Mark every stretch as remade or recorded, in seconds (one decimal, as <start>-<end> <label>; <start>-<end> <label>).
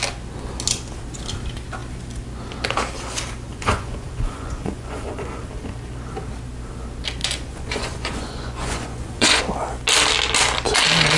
0.0-3.5 recorded; 3.5-5.4 remade; 5.4-7.2 recorded; 7.2-9.4 remade; 9.4-11.2 recorded